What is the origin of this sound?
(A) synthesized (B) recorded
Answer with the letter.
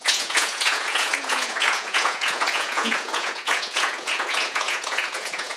A